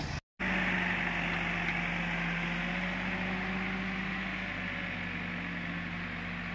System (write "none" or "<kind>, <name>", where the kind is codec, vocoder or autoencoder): none